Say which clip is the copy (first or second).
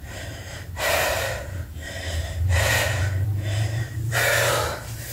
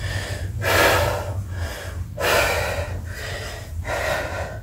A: first